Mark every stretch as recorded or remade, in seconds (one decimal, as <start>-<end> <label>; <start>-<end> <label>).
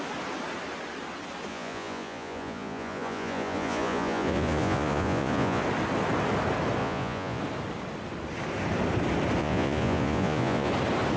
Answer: 0.0-1.5 recorded; 1.5-5.6 remade; 5.6-6.8 recorded; 6.8-7.4 remade; 7.4-9.4 recorded; 9.4-10.7 remade; 10.7-11.2 recorded